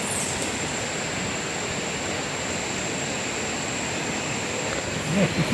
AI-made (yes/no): no